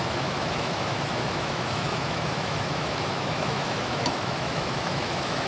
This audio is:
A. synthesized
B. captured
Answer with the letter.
A